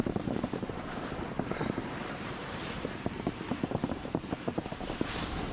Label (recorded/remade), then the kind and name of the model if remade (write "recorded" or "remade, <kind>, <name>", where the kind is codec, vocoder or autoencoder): remade, vocoder, BigVGAN v2